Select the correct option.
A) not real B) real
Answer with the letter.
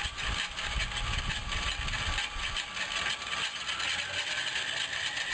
B